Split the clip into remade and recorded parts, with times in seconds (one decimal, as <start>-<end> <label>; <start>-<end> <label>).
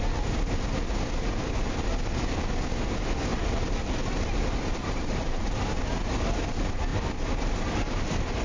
0.0-4.8 recorded; 4.8-5.8 remade; 5.8-8.4 recorded